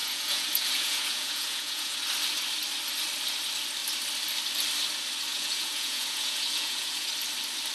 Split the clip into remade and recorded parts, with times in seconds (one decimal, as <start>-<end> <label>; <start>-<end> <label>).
0.0-2.0 remade; 2.0-5.3 recorded; 5.3-7.1 remade; 7.1-7.7 recorded